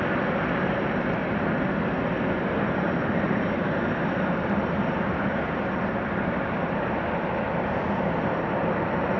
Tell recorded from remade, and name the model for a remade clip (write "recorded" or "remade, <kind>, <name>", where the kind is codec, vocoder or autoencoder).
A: recorded